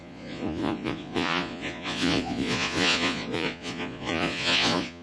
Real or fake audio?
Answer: fake